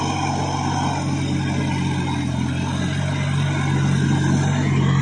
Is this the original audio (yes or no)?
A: yes